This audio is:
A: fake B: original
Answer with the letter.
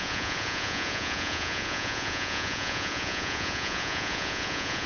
A